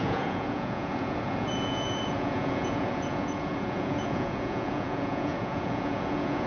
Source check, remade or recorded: remade